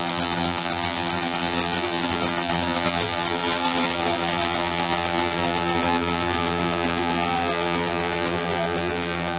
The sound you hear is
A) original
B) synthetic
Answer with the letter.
B